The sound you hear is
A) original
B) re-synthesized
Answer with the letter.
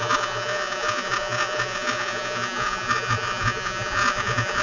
B